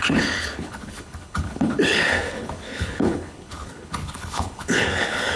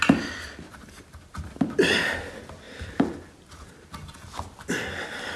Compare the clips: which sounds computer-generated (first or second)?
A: first